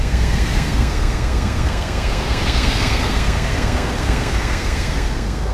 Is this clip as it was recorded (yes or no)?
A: no